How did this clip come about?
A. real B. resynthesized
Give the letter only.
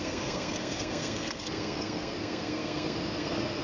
B